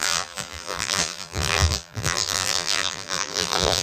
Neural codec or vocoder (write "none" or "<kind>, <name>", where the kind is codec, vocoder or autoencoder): vocoder, BigVGAN v2